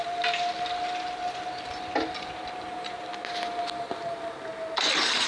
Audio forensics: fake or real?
real